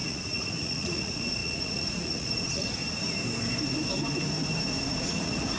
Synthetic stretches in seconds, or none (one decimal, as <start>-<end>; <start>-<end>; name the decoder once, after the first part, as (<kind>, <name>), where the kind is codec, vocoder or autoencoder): 0.0-2.8 (vocoder, Vocos); 4.9-5.6

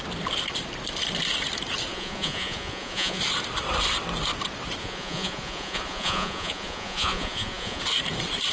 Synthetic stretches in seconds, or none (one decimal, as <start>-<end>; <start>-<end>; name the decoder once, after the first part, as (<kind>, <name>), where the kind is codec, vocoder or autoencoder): 1.9-3.2 (vocoder, Vocos); 4.8-7.8

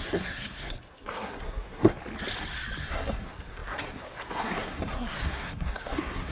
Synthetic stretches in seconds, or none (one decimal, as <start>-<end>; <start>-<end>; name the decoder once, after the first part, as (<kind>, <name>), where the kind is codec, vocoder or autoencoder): 0.0-2.0 (codec, SNAC); 2.8-6.3

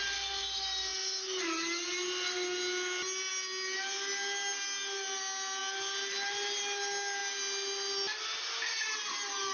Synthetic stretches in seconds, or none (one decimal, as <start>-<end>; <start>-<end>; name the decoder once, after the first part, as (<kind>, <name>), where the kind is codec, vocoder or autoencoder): none

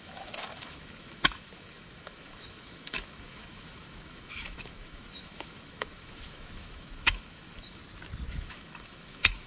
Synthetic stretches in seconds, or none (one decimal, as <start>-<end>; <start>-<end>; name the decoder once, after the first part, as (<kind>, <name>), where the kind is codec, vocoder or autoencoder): 0.0-7.8 (autoencoder, DAC-VAE); 8.3-9.5